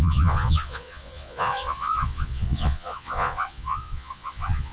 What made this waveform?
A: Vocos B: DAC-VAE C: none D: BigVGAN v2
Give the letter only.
A